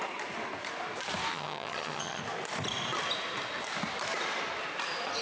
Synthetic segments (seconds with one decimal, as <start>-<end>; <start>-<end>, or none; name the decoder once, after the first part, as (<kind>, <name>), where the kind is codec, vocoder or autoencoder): 1.3-2.2 (vocoder, HiFi-GAN)